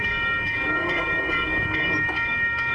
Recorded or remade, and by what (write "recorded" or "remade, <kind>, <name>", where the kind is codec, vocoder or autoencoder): remade, codec, DAC